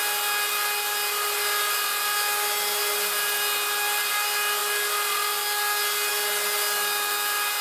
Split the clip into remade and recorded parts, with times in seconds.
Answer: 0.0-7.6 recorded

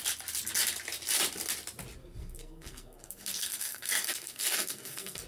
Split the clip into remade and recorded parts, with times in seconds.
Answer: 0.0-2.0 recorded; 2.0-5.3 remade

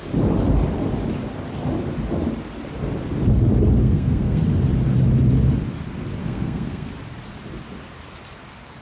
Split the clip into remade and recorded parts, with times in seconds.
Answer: 0.0-3.8 recorded; 3.8-4.4 remade; 4.4-6.2 recorded; 6.2-6.9 remade; 6.9-8.8 recorded

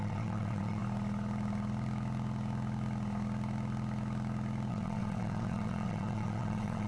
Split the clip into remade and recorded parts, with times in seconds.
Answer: 0.0-0.8 remade; 0.8-4.7 recorded; 4.7-6.9 remade

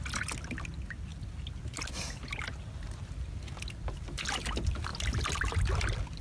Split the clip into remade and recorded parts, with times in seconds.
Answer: 0.0-6.2 recorded